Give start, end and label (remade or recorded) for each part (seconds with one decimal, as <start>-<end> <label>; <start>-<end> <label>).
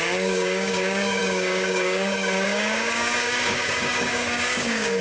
0.0-5.0 remade